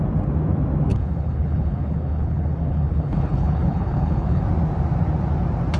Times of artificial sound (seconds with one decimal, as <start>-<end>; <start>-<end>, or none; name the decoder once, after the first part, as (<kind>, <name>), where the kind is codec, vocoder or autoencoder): 0.9-4.4 (codec, HILCodec)